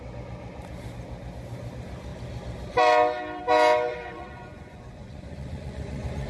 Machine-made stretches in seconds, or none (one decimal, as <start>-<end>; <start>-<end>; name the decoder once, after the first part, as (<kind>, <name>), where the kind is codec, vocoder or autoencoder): 3.9-6.3 (vocoder, Vocos)